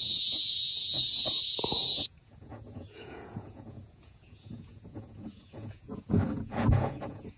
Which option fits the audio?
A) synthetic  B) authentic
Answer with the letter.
A